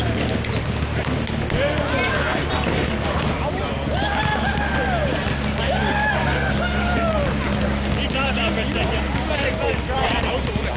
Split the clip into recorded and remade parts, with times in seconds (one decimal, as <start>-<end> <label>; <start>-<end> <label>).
0.0-2.5 recorded; 2.5-3.7 remade; 3.7-4.3 recorded; 4.3-6.1 remade; 6.1-9.6 recorded; 9.6-10.3 remade; 10.3-10.8 recorded